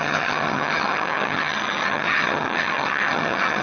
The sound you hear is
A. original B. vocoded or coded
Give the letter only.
B